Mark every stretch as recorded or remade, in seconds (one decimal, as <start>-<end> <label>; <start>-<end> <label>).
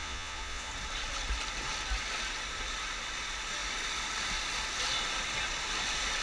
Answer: 0.0-0.7 remade; 0.7-6.2 recorded